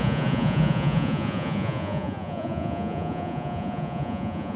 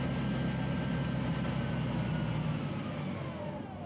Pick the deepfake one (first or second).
first